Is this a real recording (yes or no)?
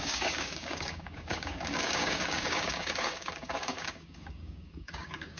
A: no